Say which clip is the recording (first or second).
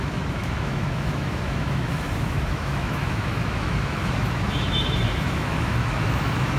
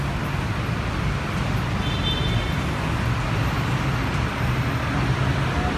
second